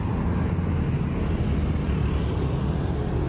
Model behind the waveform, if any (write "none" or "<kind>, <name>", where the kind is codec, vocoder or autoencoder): none